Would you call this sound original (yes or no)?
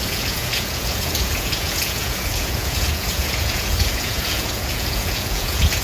no